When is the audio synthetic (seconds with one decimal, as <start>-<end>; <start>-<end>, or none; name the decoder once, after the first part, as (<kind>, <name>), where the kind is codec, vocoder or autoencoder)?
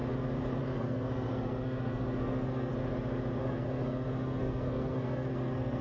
0.6-2.7 (codec, SNAC); 3.4-5.8